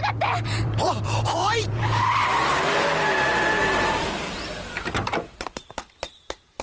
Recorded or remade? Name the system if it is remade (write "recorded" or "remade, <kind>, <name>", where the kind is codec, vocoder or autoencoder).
remade, vocoder, BigVGAN v2